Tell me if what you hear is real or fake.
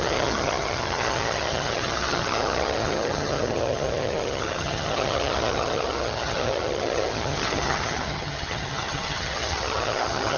fake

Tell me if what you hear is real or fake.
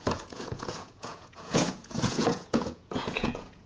fake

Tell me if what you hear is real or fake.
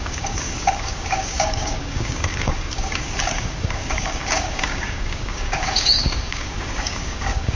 fake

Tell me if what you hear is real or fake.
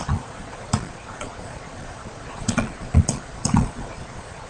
fake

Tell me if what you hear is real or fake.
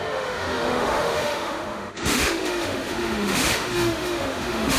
fake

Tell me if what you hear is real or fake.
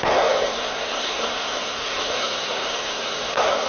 fake